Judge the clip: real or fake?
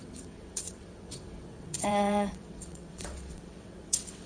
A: fake